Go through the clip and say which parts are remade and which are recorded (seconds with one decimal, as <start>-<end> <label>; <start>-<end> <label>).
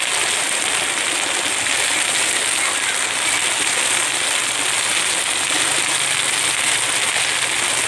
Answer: 0.0-7.9 recorded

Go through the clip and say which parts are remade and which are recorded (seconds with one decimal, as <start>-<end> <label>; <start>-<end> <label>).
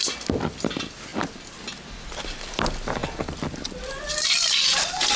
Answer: 0.0-5.2 recorded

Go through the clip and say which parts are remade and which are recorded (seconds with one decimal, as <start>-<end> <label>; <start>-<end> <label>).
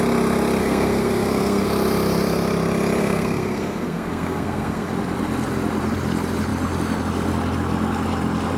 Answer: 0.0-0.6 recorded; 0.6-1.7 remade; 1.7-3.0 recorded; 3.0-4.9 remade; 4.9-8.6 recorded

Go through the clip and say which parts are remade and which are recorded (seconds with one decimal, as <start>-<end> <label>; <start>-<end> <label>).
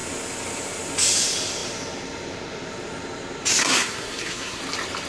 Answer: 0.0-3.6 recorded; 3.6-4.6 remade; 4.6-5.1 recorded